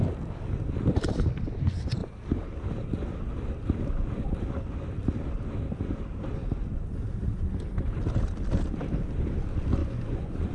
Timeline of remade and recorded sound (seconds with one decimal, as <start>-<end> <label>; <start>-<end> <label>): 0.0-9.8 recorded; 9.8-10.5 remade